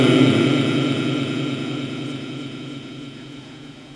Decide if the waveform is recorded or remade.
remade